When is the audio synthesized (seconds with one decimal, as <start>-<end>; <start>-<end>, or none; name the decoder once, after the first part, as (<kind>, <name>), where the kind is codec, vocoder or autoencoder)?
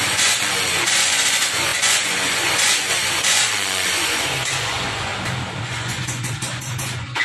0.0-5.1 (vocoder, Vocos); 5.6-7.2